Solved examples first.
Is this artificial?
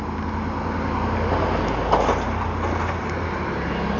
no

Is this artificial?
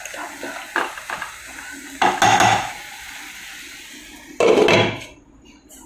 no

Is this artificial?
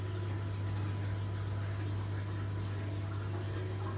no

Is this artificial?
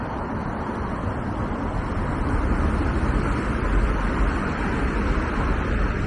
yes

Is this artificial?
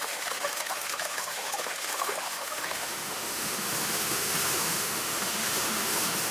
yes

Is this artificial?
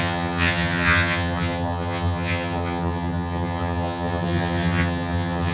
yes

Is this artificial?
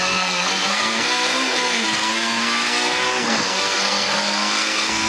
yes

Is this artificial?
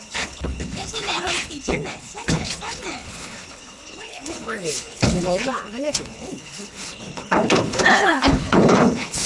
yes